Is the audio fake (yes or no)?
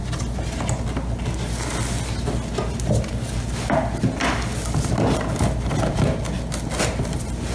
no